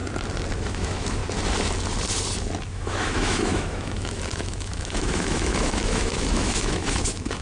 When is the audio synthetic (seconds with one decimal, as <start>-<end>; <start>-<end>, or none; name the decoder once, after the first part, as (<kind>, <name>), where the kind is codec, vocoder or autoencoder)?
0.7-1.2 (autoencoder, DAC-VAE); 2.7-7.4